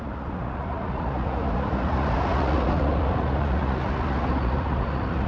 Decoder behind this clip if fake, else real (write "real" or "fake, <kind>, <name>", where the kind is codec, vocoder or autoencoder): fake, vocoder, Vocos